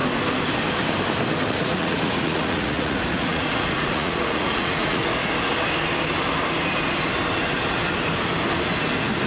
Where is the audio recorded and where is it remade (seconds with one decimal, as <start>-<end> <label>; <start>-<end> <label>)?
0.0-1.5 recorded; 1.5-5.0 remade; 5.0-9.3 recorded